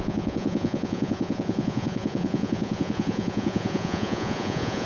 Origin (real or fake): fake